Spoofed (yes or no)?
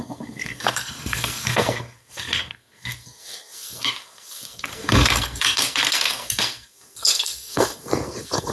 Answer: yes